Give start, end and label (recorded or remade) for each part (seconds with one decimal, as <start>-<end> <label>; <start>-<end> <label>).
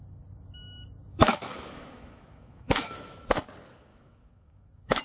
0.0-1.1 recorded; 1.1-3.4 remade; 3.4-3.9 recorded; 3.9-5.0 remade